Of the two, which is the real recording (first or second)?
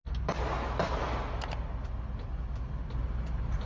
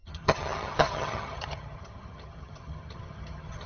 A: first